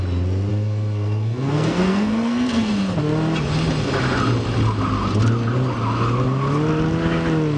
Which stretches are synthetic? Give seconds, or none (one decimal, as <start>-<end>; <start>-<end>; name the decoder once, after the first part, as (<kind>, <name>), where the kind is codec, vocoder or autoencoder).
0.5-2.7 (codec, SNAC)